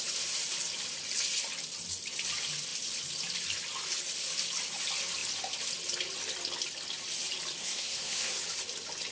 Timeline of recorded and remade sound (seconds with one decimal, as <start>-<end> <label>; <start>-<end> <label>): 0.0-7.6 recorded; 7.6-8.4 remade; 8.4-9.1 recorded